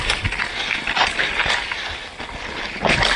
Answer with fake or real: real